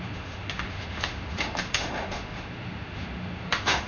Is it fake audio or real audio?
fake